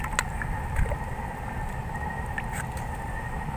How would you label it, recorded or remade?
recorded